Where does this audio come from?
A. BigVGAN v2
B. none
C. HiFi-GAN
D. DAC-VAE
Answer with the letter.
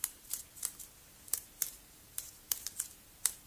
A